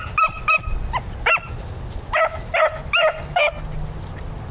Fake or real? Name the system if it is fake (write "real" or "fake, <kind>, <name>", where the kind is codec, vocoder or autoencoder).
real